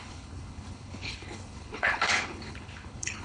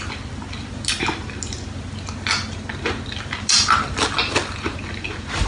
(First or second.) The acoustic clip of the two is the second